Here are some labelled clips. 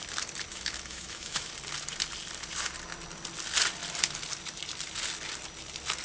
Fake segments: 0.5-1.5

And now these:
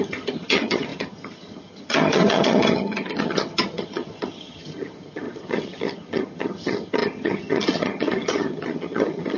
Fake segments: 0.0-9.4

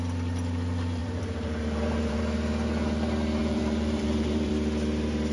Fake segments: 1.0-2.2; 3.4-4.5

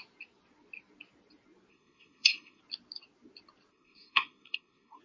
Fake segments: 1.7-2.6; 3.7-5.0

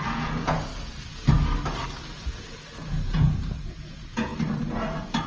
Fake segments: 0.0-0.7; 2.2-4.3

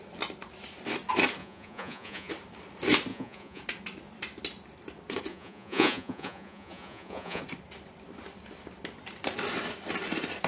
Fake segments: 1.4-2.3; 3.1-3.6; 5.3-7.4

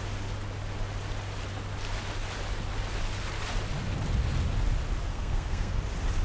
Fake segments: 5.1-5.8

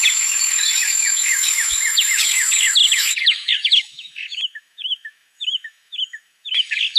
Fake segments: 0.0-7.0